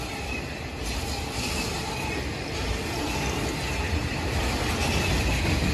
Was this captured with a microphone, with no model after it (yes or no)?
yes